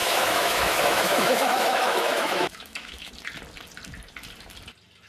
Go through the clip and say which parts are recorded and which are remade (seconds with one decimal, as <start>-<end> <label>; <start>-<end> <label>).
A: 0.0-3.1 remade; 3.1-5.1 recorded